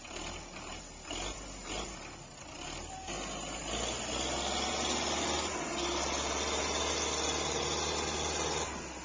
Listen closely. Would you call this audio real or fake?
real